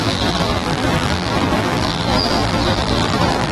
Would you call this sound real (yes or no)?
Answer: no